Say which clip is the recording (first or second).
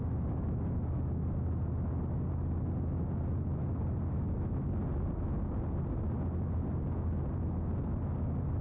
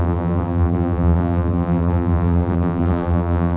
first